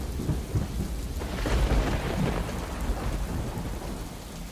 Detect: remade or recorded recorded